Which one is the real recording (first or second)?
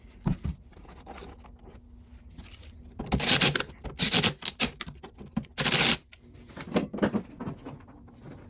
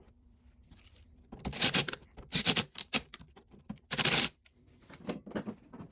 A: first